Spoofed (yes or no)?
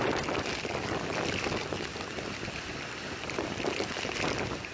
no